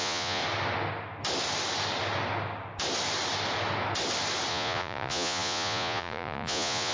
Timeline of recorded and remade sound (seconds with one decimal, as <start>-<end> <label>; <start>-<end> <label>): 0.0-0.4 remade; 0.4-4.5 recorded; 4.5-6.9 remade